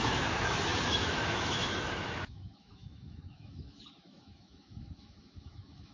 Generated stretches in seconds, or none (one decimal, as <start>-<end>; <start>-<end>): 0.0-5.9